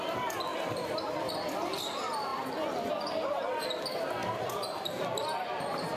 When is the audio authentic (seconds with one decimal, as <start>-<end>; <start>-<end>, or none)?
0.0-6.0